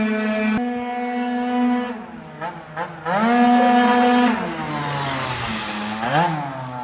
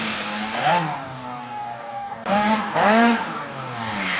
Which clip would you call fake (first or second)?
second